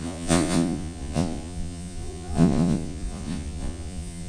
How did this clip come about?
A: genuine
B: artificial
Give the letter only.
B